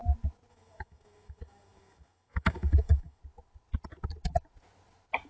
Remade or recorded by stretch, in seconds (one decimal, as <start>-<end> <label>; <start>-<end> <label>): 0.0-0.5 recorded; 0.5-3.2 remade; 3.2-5.3 recorded